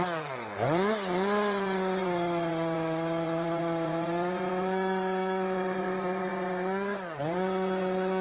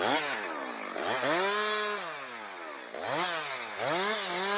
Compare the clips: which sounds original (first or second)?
second